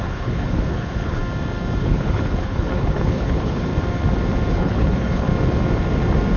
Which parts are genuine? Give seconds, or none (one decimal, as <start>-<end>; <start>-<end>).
1.2-1.8; 3.7-4.5; 5.3-6.4